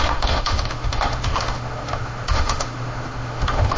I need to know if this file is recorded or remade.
remade